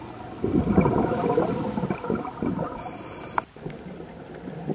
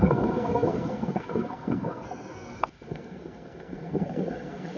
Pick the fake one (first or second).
second